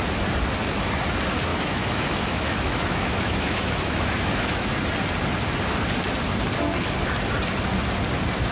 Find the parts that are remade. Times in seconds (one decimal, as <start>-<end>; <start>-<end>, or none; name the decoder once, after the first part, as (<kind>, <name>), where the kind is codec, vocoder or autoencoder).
1.5-4.7 (autoencoder, DAC-VAE)